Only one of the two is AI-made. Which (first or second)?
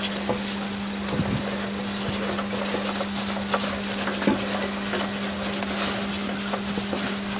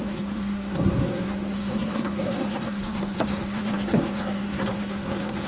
second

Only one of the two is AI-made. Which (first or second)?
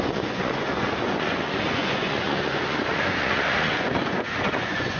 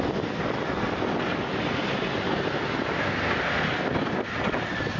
first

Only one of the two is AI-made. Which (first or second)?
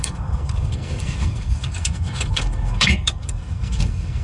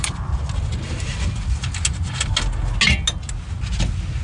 first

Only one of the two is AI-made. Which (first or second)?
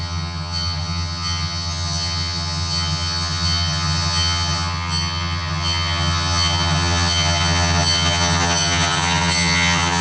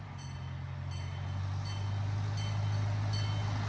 first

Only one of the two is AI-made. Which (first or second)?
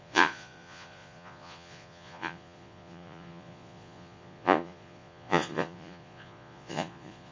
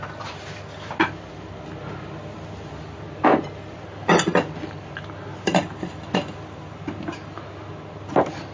first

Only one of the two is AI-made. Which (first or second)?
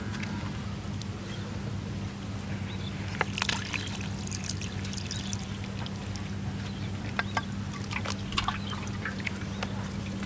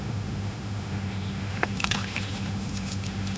second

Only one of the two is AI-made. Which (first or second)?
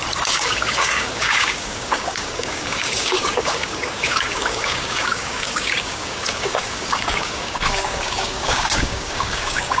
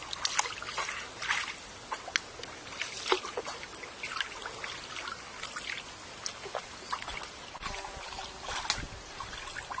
first